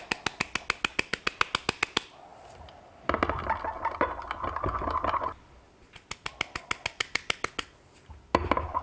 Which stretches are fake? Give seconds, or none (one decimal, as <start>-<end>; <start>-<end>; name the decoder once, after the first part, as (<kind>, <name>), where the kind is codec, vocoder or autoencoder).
none